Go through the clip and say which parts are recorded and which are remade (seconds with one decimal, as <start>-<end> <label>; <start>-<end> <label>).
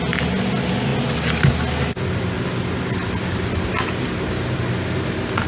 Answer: 0.0-5.5 recorded